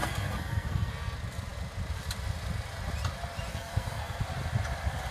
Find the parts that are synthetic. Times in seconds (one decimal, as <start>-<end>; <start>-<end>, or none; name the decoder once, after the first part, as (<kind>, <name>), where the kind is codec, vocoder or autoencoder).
0.0-0.9 (codec, SNAC); 3.5-4.2